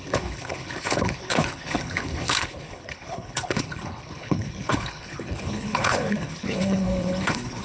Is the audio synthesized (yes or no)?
yes